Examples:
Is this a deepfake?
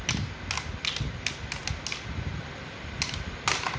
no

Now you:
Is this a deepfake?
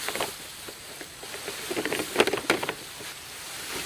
yes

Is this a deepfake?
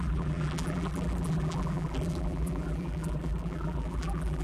yes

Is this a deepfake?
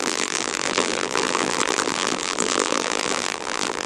yes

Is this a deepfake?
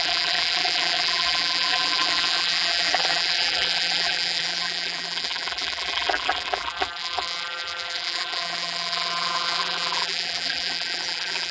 yes